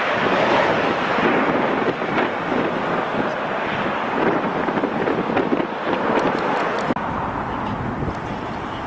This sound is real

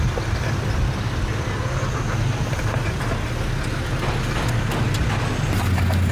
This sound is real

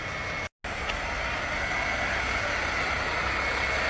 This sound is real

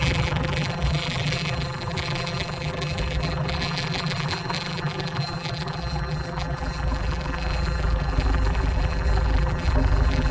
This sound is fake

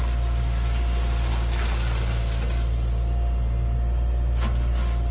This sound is real